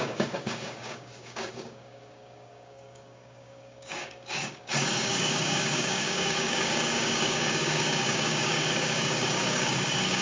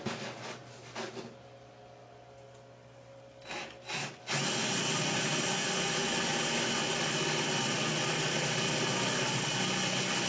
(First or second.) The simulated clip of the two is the first